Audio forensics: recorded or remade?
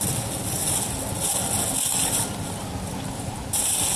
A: recorded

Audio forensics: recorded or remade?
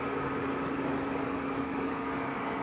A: remade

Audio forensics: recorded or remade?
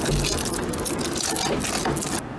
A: recorded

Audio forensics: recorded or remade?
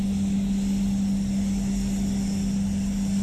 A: recorded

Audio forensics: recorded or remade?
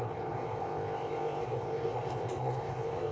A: remade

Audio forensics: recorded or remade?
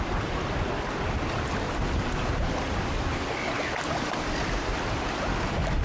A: recorded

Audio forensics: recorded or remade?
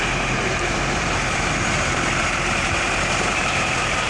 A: remade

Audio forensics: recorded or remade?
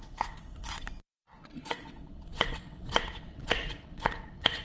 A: remade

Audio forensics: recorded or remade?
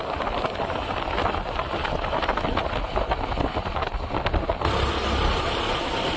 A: recorded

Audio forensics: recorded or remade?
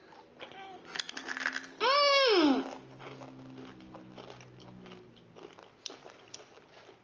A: recorded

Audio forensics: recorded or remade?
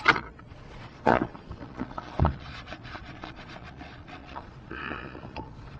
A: remade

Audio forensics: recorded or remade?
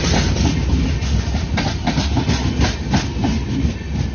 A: recorded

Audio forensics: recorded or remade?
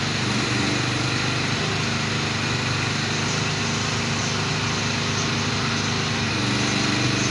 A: recorded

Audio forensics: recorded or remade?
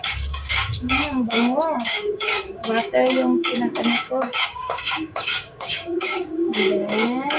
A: remade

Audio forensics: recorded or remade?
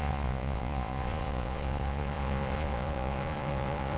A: remade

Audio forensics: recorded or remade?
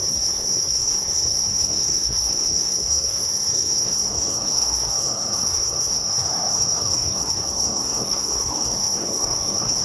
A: remade